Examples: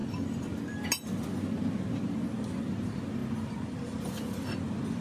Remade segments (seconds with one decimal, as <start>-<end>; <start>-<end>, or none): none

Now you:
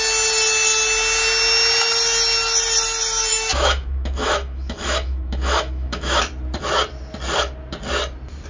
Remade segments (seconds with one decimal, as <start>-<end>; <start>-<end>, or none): 3.3-6.2

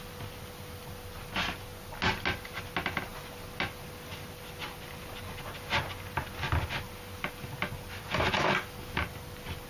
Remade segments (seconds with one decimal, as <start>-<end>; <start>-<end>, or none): none

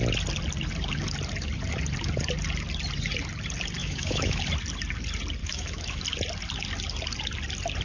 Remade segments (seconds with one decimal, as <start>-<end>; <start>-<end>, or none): 3.8-4.4; 5.4-6.0